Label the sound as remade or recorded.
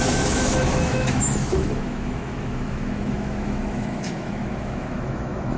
remade